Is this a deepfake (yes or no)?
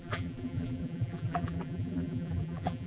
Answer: yes